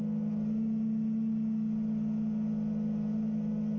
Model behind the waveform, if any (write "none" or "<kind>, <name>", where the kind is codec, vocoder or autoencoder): none